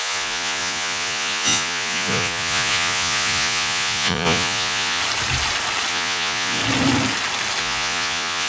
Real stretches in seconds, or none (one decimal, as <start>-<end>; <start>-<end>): 5.0-5.9; 6.6-7.6